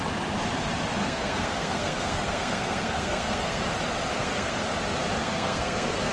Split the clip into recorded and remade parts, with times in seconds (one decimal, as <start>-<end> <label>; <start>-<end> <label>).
0.0-1.0 recorded; 1.0-3.6 remade; 3.6-4.1 recorded; 4.1-4.6 remade; 4.6-5.2 recorded; 5.2-6.1 remade